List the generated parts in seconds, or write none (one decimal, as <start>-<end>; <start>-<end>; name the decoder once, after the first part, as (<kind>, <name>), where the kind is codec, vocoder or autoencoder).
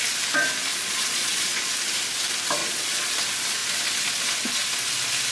0.7-1.7 (vocoder, Vocos); 2.6-3.2